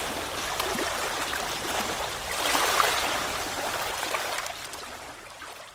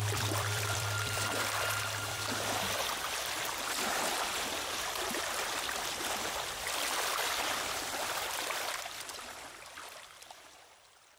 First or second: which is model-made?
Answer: second